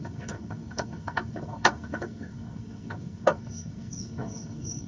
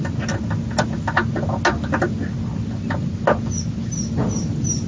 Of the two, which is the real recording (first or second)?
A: second